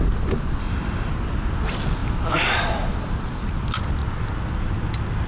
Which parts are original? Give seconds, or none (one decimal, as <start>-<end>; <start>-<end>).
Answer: 0.0-0.6; 1.1-5.3